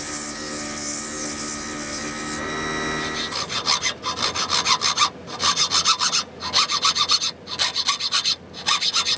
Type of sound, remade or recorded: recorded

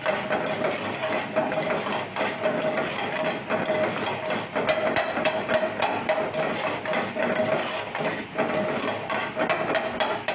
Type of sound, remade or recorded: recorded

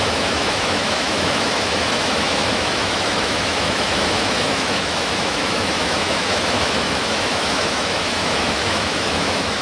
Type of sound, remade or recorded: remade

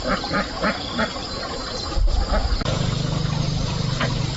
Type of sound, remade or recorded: recorded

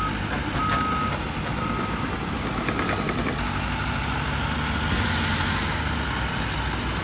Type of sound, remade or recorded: recorded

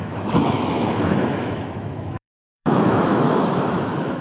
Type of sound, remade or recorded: remade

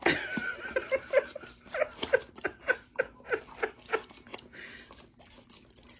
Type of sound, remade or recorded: recorded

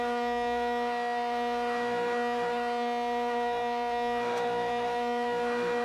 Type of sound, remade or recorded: remade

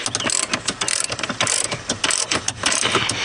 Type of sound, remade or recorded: recorded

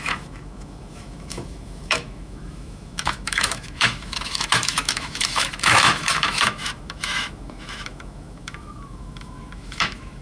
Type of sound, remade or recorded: remade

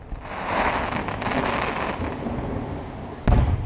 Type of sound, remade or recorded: recorded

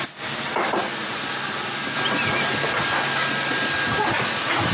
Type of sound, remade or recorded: recorded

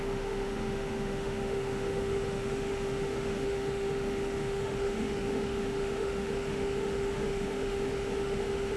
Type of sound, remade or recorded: remade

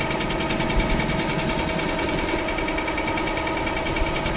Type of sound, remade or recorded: recorded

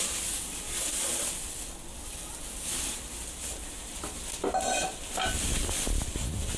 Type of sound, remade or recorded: recorded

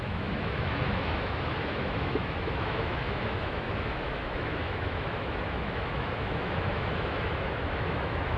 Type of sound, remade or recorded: remade